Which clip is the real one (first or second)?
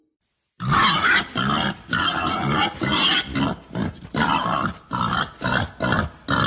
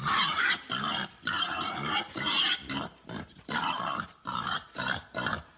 first